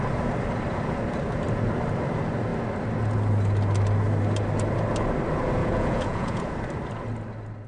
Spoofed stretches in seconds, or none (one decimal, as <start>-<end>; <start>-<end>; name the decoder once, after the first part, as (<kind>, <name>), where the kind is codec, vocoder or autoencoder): 5.6-6.4 (vocoder, Vocos)